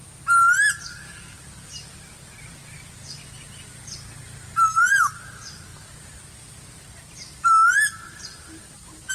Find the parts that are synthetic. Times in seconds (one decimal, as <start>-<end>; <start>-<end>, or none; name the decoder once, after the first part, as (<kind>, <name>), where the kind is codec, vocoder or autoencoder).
none